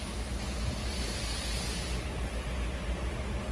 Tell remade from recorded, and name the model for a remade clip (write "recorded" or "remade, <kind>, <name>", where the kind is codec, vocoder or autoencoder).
recorded